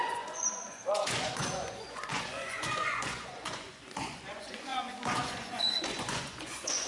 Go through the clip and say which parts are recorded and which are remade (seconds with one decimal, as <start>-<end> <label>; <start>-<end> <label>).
0.0-6.9 remade